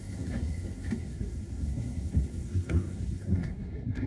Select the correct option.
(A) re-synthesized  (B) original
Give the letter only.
A